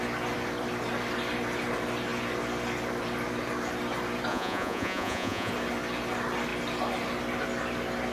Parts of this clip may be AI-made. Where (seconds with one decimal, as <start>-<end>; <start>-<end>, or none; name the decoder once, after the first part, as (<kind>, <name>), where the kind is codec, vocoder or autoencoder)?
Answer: 4.3-5.5 (vocoder, Vocos)